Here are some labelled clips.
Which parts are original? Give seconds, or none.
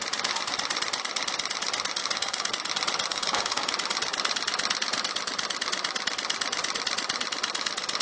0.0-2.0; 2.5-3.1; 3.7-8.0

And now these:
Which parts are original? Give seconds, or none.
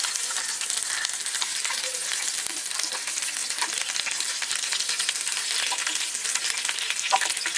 0.0-7.6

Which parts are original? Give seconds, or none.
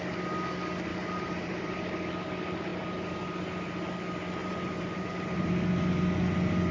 0.0-0.9; 1.9-2.7; 3.2-4.4; 5.5-6.7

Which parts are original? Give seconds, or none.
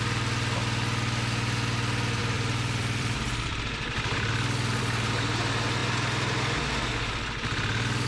0.0-2.2; 4.8-8.1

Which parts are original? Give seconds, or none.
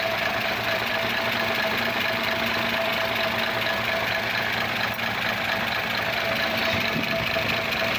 2.9-6.4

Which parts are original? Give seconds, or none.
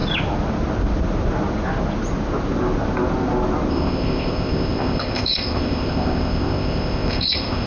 0.0-3.7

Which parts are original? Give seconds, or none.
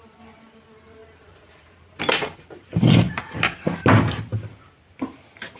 0.0-1.0; 3.2-4.3; 4.9-5.6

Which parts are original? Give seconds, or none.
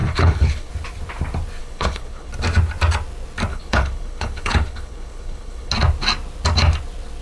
0.7-1.6; 2.3-3.5; 5.7-7.2